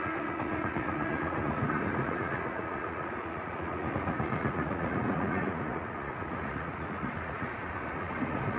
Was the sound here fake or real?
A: fake